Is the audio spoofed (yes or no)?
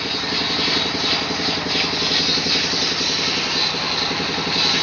no